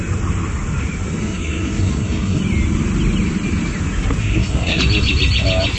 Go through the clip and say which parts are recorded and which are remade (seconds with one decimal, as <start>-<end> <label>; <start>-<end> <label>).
0.0-1.2 recorded; 1.2-2.4 remade; 2.4-4.2 recorded; 4.2-4.8 remade; 4.8-5.8 recorded